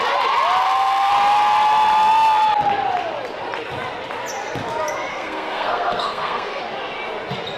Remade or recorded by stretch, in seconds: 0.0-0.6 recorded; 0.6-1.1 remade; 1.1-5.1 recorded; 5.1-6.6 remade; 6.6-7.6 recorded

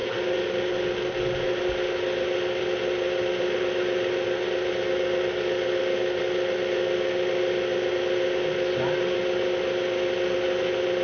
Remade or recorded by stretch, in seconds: 0.0-11.0 recorded

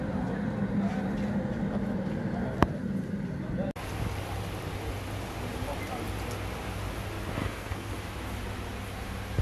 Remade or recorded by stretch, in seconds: 0.0-7.4 recorded; 7.4-7.9 remade; 7.9-9.4 recorded

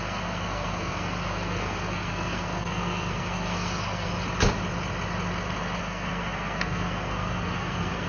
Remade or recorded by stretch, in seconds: 0.0-4.1 remade; 4.1-5.8 recorded; 5.8-8.1 remade